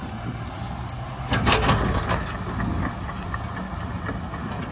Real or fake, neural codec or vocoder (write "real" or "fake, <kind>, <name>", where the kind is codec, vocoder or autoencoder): real